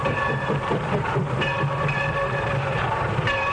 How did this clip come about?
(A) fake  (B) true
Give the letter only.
A